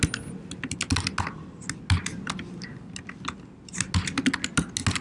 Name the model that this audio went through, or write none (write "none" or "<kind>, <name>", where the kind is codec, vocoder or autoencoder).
none